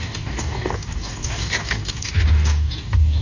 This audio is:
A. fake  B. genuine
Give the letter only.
A